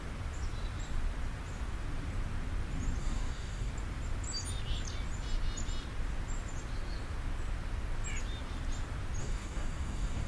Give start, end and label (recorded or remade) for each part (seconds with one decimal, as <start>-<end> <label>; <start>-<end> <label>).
0.0-3.0 recorded; 3.0-3.7 remade; 3.7-9.2 recorded; 9.2-10.3 remade